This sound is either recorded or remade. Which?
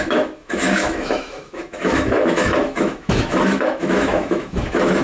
remade